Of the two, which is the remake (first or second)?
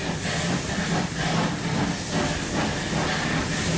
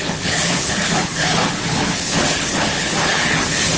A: second